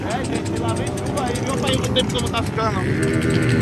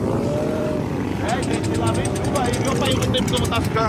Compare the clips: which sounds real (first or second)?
first